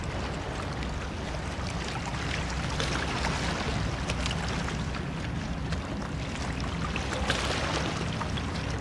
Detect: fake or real real